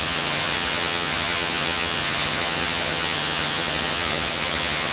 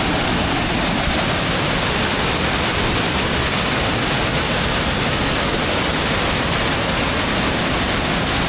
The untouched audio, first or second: second